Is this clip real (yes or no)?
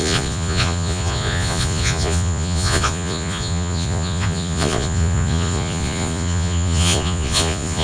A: no